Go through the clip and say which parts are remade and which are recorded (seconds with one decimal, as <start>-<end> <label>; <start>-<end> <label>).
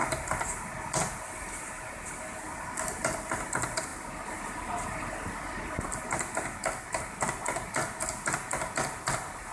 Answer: 0.0-9.5 recorded